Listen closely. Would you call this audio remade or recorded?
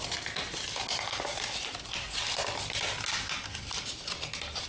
recorded